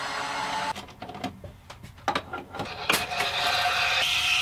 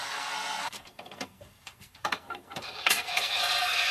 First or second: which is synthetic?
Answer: second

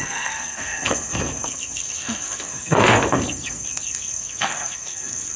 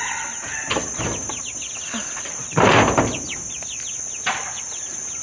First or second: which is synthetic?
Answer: first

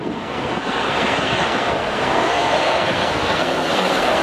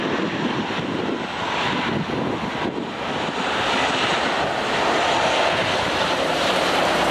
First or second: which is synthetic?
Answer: first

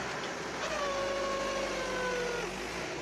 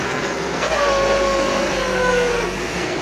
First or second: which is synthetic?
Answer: second